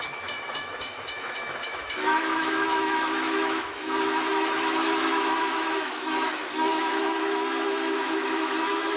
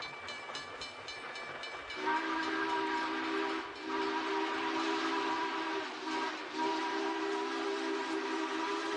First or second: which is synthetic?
first